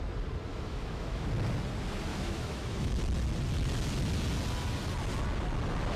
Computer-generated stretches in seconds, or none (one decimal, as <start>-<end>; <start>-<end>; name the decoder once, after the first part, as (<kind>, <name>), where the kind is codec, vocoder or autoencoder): 0.5-1.3 (autoencoder, DAC-VAE); 2.1-2.9